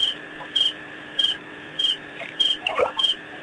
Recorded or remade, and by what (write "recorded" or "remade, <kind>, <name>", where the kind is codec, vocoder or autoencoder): remade, vocoder, BigVGAN v2